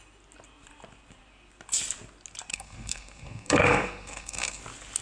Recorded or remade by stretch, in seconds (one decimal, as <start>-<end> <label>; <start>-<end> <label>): 0.0-2.5 recorded; 2.5-4.6 remade; 4.6-5.0 recorded